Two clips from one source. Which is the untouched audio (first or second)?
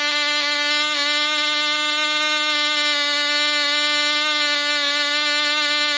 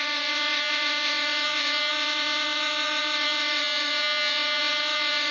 first